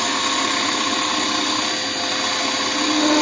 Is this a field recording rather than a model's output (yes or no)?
yes